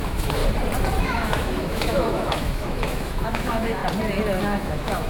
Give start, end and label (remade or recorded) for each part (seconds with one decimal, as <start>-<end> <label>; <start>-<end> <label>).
0.0-0.4 remade; 0.4-1.0 recorded; 1.0-3.8 remade; 3.8-4.4 recorded; 4.4-5.1 remade